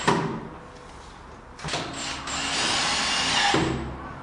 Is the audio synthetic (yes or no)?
no